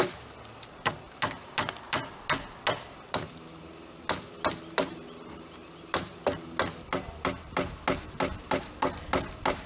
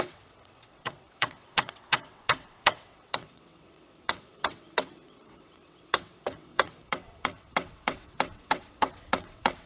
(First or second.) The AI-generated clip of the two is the second